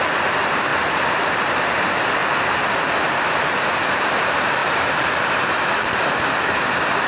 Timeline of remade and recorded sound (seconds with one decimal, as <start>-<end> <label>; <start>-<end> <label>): 0.0-0.7 remade; 0.7-1.3 recorded; 1.3-2.2 remade; 2.2-2.9 recorded; 2.9-7.1 remade